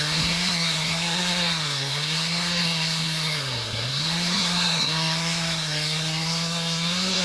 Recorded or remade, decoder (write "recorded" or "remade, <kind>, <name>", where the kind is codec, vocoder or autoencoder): remade, codec, SNAC